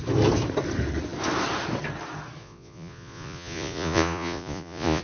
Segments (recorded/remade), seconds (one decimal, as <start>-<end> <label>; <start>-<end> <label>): 0.0-2.4 recorded; 2.4-5.0 remade